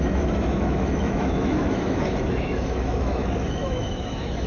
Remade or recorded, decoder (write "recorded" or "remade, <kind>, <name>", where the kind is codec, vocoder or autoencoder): remade, autoencoder, DAC-VAE